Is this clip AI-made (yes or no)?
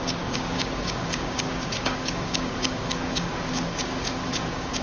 yes